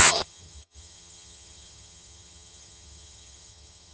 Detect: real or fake fake